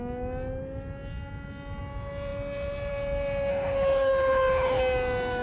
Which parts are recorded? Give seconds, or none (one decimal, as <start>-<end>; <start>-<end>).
0.0-3.5; 4.8-5.4